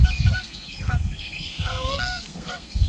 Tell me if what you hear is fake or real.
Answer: fake